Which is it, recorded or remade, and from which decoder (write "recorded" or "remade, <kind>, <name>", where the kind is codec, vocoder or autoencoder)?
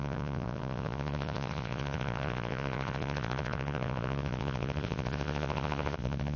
remade, vocoder, Vocos